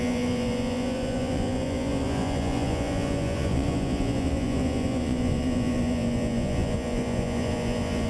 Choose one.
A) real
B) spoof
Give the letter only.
B